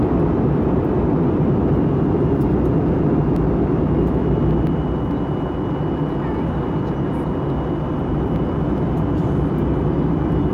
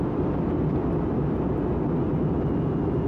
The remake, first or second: first